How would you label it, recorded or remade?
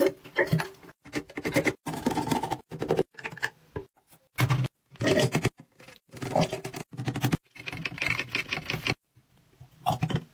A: recorded